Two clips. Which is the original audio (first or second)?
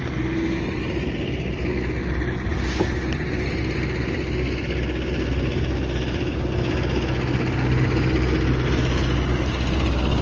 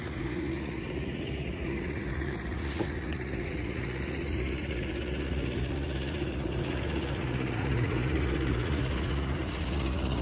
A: first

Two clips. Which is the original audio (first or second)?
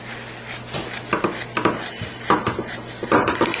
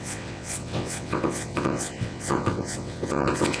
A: first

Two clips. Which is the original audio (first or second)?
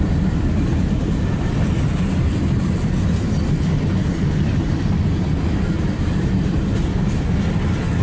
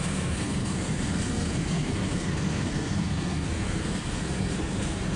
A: first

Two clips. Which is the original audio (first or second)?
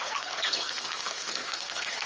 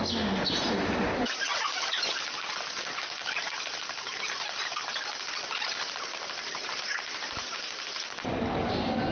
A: second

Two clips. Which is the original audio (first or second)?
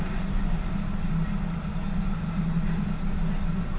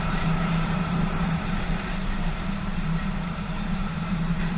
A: first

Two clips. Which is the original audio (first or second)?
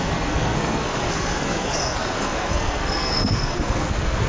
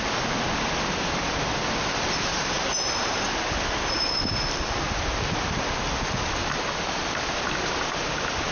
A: second